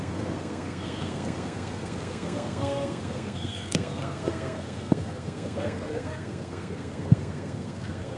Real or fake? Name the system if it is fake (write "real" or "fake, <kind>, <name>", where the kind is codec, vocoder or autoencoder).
fake, codec, SNAC